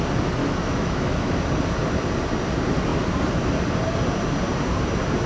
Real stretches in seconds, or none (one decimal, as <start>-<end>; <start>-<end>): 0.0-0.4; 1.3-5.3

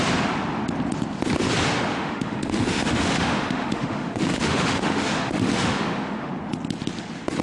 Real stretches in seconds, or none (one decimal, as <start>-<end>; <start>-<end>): 0.0-1.9; 6.3-7.4

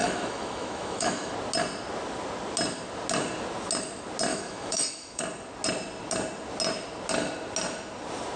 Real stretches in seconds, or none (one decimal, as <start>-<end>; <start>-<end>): 1.3-4.3; 5.2-8.4

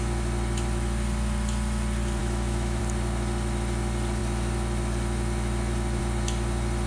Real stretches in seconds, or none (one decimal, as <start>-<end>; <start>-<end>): 0.0-2.2; 2.8-6.9

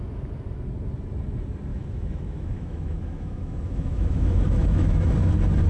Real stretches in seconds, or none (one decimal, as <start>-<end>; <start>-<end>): 0.0-1.7; 5.1-5.7

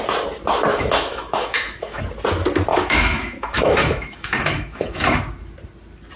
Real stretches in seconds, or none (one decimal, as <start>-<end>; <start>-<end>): 0.0-0.7; 2.0-2.7; 5.2-6.2

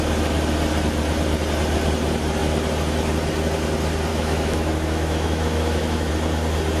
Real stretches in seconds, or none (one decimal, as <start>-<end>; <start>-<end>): 0.0-4.1; 6.1-6.8